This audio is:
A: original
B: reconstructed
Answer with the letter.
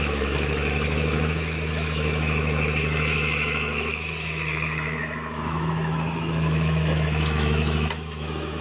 B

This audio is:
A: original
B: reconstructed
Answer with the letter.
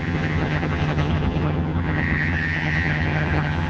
B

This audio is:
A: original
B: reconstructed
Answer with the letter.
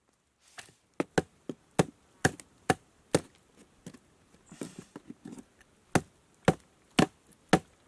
A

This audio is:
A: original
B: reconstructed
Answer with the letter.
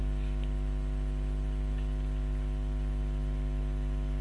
A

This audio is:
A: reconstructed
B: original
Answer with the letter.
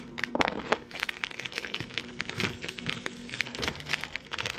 A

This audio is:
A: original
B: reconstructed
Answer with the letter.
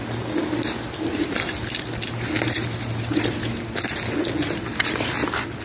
A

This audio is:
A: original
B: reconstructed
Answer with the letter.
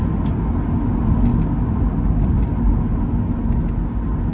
A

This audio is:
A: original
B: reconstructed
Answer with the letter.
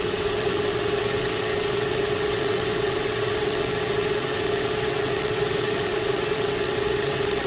B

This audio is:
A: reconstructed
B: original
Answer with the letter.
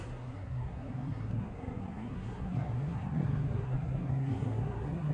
A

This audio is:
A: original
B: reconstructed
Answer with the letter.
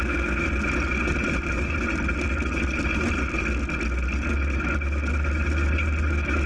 A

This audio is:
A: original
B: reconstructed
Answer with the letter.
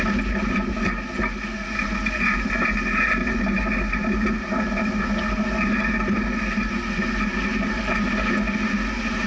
A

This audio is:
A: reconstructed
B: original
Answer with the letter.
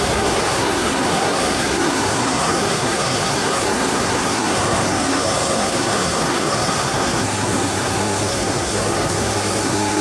A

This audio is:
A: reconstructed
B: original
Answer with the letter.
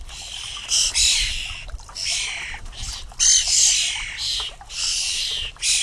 B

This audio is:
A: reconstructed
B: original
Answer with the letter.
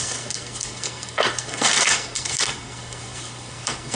A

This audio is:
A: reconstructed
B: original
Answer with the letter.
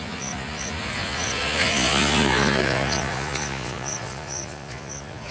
A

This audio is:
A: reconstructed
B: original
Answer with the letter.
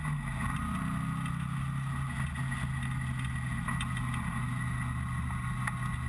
B